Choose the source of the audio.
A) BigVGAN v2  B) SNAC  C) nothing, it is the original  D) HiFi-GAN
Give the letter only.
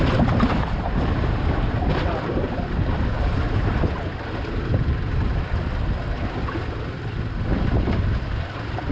A